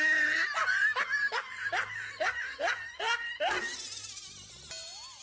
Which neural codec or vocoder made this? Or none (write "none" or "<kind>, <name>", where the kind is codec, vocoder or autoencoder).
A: none